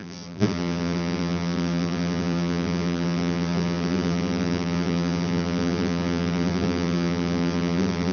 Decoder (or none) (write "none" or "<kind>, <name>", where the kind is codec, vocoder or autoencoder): vocoder, BigVGAN v2